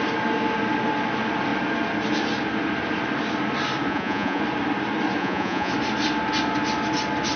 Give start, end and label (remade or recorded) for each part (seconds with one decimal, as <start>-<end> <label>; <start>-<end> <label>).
0.0-3.9 recorded; 3.9-4.4 remade; 4.4-5.2 recorded; 5.2-5.7 remade; 5.7-7.4 recorded

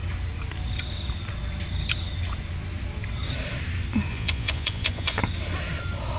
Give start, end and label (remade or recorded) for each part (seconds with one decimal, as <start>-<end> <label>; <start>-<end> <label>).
0.0-4.1 recorded; 4.1-5.2 remade; 5.2-6.2 recorded

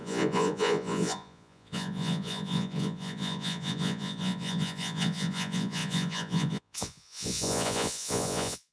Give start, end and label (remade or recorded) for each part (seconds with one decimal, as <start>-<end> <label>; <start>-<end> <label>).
0.0-8.7 remade

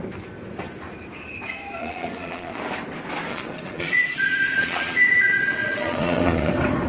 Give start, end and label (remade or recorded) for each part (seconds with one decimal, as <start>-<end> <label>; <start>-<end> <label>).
0.0-1.8 recorded; 1.8-2.6 remade; 2.6-3.3 recorded; 3.3-6.5 remade; 6.5-6.9 recorded

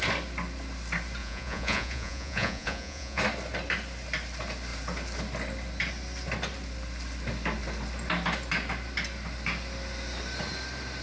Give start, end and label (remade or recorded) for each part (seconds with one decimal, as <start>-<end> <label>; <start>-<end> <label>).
0.0-1.2 recorded; 1.2-3.2 remade; 3.2-11.0 recorded

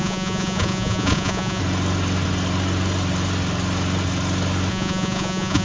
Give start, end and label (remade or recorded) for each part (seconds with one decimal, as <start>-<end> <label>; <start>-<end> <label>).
0.0-1.6 remade; 1.6-4.7 recorded; 4.7-5.6 remade

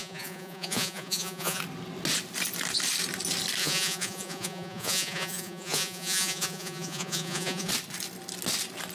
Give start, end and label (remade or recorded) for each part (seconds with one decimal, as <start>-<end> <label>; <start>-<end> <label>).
0.0-1.6 remade; 1.6-3.6 recorded; 3.6-7.7 remade; 7.7-8.9 recorded